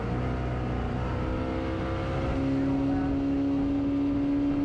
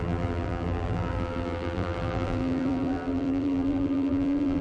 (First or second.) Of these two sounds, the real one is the first